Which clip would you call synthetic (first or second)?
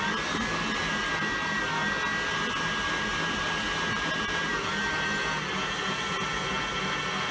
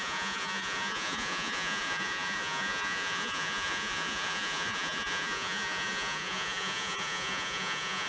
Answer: second